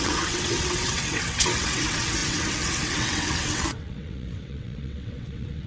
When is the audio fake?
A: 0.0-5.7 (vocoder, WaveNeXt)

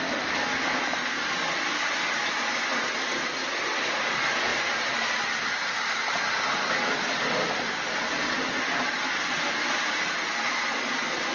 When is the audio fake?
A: none

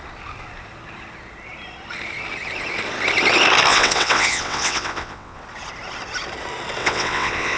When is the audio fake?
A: 3.7-5.4 (vocoder, WaveNeXt); 6.8-7.6